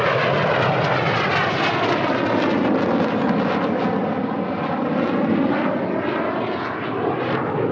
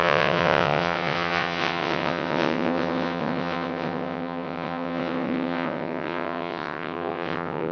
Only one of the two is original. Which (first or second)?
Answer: first